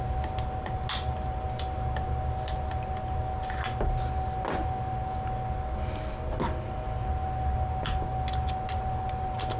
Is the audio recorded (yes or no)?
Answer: yes